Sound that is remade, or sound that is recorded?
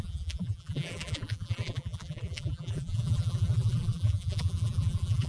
remade